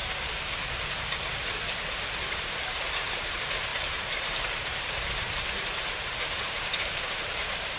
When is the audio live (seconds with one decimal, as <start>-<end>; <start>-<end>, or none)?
0.0-2.0

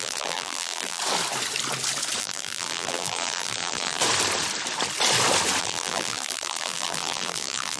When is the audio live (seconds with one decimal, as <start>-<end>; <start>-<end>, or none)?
1.0-2.2; 4.0-5.6

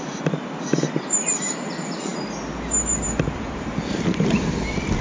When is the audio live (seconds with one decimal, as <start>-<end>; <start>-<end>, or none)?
0.0-5.0

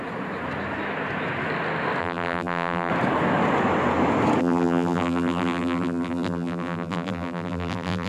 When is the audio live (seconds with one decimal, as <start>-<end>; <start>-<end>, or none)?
0.0-2.0; 2.9-4.4

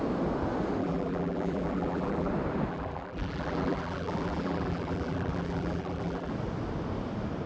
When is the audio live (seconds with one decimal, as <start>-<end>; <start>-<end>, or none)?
0.0-0.8; 2.3-2.7; 6.3-7.5

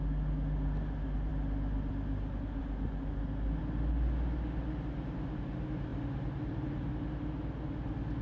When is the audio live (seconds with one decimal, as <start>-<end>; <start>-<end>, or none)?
0.0-5.9; 6.9-8.2

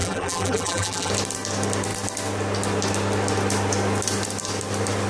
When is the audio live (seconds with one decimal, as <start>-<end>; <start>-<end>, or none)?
1.1-5.1